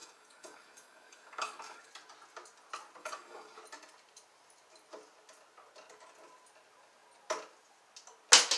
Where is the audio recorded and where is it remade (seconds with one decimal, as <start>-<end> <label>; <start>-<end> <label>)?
0.0-1.9 remade; 1.9-3.0 recorded; 3.0-3.6 remade; 3.6-8.6 recorded